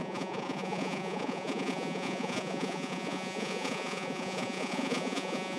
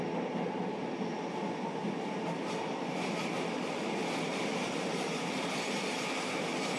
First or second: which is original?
second